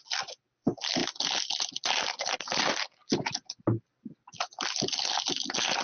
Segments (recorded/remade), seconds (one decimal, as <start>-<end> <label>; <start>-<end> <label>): 0.0-5.8 recorded